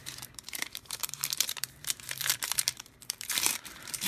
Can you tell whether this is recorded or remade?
remade